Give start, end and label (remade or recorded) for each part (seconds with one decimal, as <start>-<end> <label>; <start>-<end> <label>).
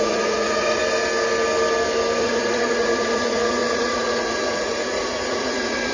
0.0-0.8 remade; 0.8-2.2 recorded; 2.2-5.9 remade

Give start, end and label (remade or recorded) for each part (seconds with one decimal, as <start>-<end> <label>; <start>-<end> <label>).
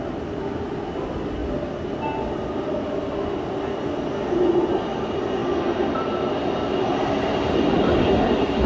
0.0-8.7 recorded